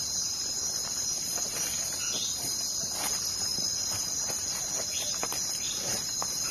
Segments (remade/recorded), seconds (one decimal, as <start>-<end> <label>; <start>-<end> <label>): 0.0-3.5 recorded; 3.5-4.3 remade; 4.3-6.5 recorded